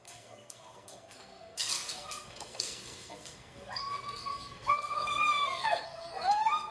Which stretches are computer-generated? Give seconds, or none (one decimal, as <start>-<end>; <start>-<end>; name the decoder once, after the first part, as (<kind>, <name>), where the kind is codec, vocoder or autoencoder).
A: 0.0-6.7 (codec, SNAC)